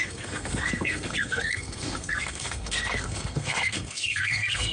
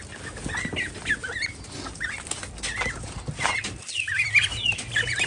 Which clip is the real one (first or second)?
second